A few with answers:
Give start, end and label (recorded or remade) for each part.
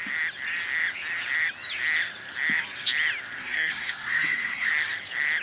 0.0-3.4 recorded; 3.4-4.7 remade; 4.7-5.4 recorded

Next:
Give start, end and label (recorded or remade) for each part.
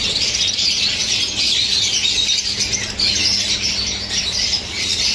0.0-1.1 remade; 1.1-4.2 recorded; 4.2-5.1 remade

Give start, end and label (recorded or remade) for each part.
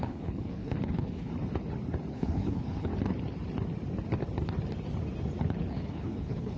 0.0-1.3 remade; 1.3-2.1 recorded; 2.1-2.9 remade; 2.9-5.7 recorded; 5.7-6.6 remade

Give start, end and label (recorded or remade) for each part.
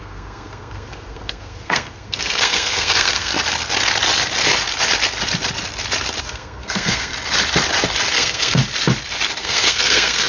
0.0-3.3 remade; 3.3-6.2 recorded; 6.2-7.1 remade; 7.1-8.1 recorded; 8.1-8.6 remade; 8.6-9.4 recorded; 9.4-10.3 remade